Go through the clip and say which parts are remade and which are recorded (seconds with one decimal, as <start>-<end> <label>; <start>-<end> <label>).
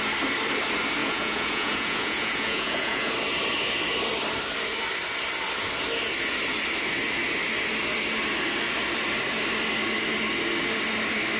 0.0-1.0 recorded; 1.0-3.1 remade; 3.1-11.4 recorded